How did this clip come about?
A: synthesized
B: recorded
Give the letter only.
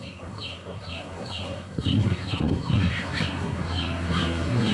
A